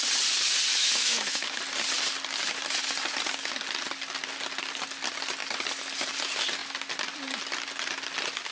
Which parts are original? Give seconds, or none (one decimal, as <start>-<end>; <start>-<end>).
0.0-0.7; 1.6-8.5